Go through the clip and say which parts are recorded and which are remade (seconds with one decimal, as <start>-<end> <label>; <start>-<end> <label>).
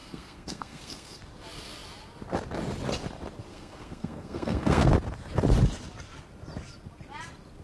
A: 0.0-1.2 remade; 1.2-3.5 recorded; 3.5-4.9 remade; 4.9-7.6 recorded